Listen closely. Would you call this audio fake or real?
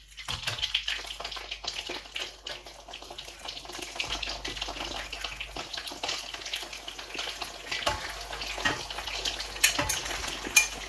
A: real